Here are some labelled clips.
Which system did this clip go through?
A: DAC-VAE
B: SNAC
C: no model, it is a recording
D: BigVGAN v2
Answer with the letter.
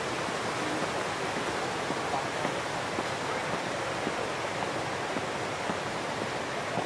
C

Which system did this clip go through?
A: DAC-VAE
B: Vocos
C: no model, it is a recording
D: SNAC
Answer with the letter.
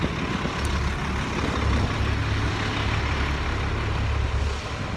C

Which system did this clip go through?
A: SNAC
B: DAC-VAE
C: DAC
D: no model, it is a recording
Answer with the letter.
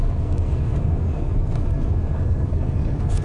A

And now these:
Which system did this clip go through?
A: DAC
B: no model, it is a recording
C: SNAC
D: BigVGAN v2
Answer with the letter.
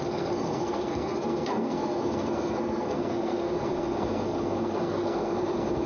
C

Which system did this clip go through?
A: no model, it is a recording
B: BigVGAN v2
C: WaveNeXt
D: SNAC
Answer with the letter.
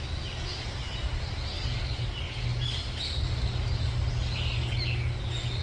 A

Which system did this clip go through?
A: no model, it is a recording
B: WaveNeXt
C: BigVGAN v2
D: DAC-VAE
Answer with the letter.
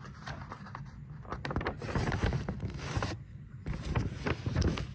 A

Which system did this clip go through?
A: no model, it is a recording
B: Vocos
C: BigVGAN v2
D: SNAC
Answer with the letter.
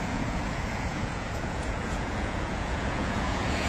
B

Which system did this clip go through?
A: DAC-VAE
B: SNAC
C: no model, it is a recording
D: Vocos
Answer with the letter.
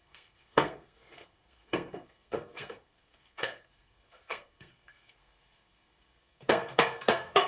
B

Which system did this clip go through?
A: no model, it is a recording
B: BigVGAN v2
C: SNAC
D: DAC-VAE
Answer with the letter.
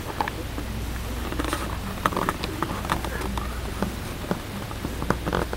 A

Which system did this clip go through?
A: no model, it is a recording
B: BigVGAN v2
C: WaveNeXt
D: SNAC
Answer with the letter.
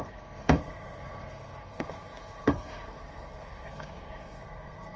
D